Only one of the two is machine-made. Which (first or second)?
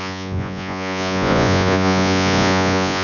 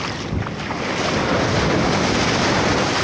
first